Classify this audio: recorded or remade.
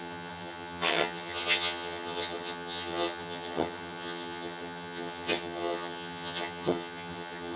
remade